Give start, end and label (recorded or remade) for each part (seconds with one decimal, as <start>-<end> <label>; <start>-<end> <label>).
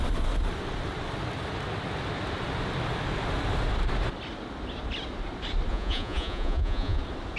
0.0-5.7 recorded; 5.7-7.0 remade; 7.0-7.4 recorded